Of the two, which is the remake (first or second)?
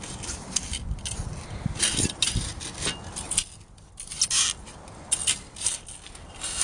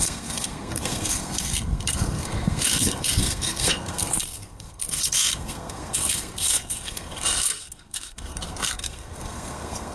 second